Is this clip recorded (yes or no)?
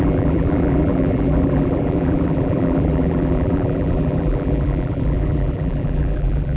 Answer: no